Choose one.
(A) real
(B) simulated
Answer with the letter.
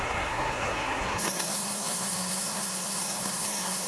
B